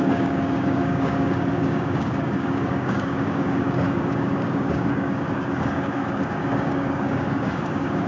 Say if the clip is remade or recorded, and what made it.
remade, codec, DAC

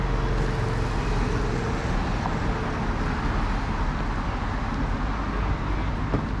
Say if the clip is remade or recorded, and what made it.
recorded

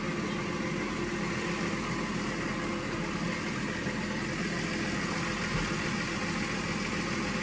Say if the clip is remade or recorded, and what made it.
recorded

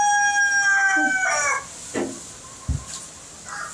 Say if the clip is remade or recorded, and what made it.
recorded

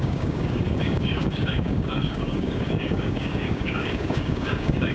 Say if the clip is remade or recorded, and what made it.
remade, codec, DAC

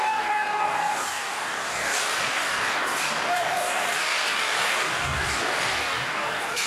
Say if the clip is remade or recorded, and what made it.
remade, codec, DAC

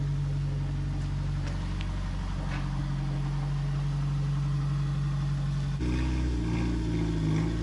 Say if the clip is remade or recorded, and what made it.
recorded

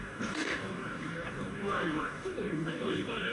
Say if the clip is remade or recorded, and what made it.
remade, codec, DAC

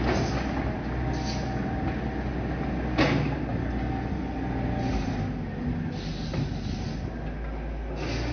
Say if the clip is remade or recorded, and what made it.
recorded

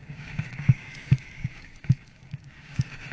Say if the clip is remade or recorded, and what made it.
remade, codec, DAC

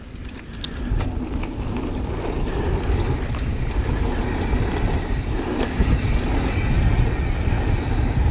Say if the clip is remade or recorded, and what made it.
recorded